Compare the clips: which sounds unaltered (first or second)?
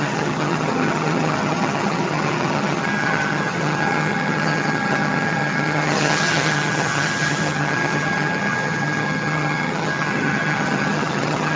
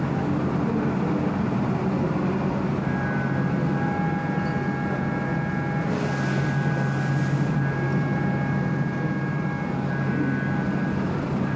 second